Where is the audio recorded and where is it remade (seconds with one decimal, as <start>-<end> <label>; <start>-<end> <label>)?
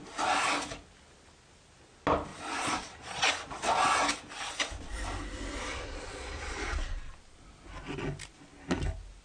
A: 0.0-2.3 recorded; 2.3-3.3 remade; 3.3-5.7 recorded; 5.7-7.1 remade; 7.1-9.2 recorded